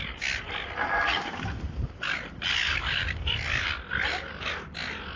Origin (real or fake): fake